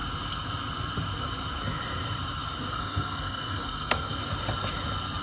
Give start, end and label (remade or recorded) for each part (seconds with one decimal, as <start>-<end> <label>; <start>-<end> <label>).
0.0-2.7 recorded; 2.7-4.2 remade; 4.2-5.2 recorded